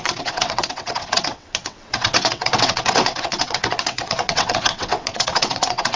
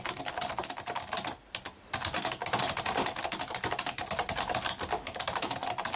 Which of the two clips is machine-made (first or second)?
first